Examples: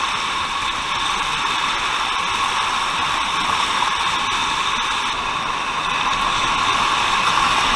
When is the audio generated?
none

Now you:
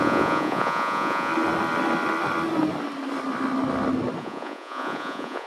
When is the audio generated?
0.0-1.3 (vocoder, Vocos); 4.2-5.5

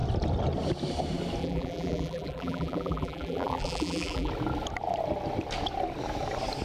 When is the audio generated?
1.4-4.3 (vocoder, BigVGAN v2)

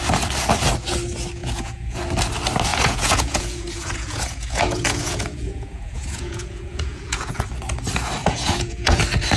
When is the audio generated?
1.4-2.0 (vocoder, Vocos); 2.7-7.4; 8.2-9.0

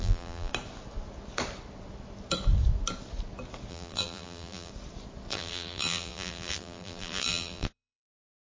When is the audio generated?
0.0-0.5 (vocoder, BigVGAN v2); 3.7-4.7; 5.3-8.5

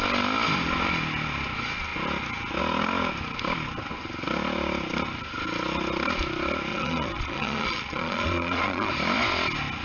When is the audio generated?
6.7-8.9 (vocoder, Vocos)